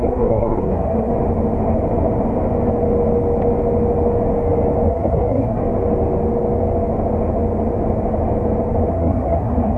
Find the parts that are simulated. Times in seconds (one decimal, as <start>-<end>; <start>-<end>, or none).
0.0-1.1; 4.9-5.6; 8.9-9.8